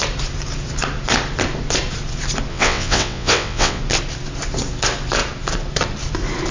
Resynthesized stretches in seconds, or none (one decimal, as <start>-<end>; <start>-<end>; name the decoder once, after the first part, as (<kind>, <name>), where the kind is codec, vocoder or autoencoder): 2.5-3.8 (vocoder, WaveNeXt)